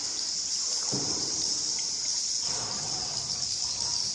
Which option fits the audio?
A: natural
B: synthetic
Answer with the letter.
A